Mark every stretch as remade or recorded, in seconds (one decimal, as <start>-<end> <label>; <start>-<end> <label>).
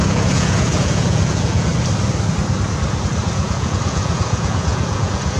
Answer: 0.0-1.7 remade; 1.7-3.3 recorded; 3.3-5.4 remade